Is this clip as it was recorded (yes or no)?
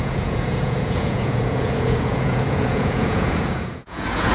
no